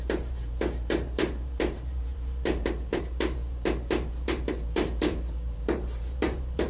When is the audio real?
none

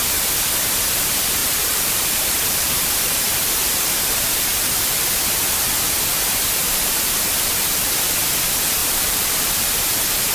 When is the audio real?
0.0-1.4; 3.3-6.6; 7.2-8.8; 9.5-10.3